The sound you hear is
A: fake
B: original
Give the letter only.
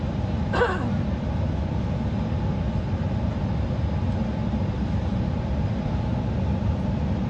B